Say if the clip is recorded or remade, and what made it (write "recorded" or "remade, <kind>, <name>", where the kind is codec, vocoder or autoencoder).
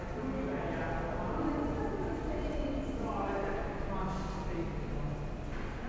recorded